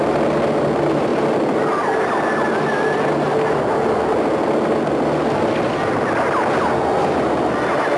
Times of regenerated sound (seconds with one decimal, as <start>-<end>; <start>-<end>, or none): none